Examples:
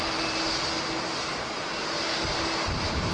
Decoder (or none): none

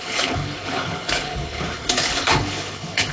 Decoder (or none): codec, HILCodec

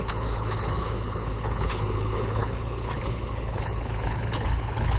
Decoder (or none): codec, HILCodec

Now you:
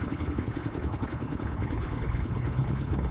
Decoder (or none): codec, HILCodec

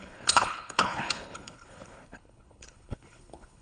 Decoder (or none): codec, HILCodec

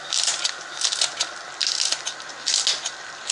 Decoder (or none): none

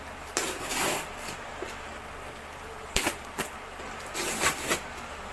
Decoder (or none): none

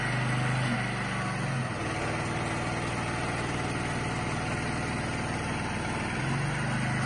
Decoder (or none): none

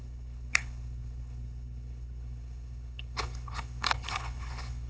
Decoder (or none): codec, HILCodec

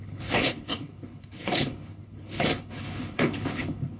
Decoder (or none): codec, HILCodec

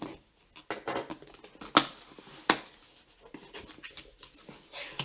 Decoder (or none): none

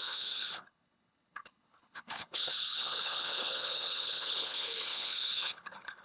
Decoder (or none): codec, HILCodec